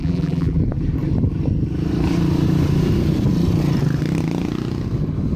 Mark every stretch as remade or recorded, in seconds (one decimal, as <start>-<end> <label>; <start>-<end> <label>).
0.0-0.6 remade; 0.6-5.4 recorded